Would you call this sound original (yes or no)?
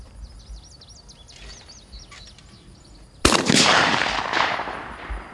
yes